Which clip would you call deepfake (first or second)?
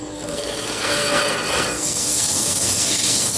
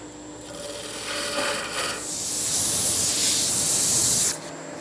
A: first